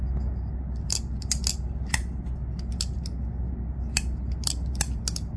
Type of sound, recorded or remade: recorded